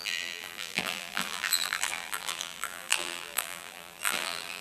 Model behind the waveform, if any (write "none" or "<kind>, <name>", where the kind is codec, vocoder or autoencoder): vocoder, BigVGAN v2